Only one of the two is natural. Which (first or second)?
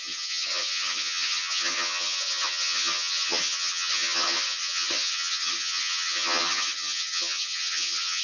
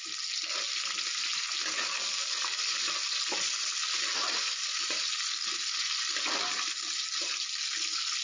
second